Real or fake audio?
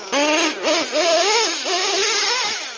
real